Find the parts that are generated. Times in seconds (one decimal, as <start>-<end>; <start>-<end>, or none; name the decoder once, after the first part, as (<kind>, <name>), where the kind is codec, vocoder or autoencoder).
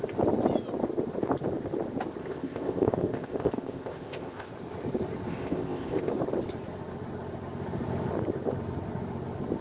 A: 2.2-4.5 (codec, ZipCodec); 5.3-6.1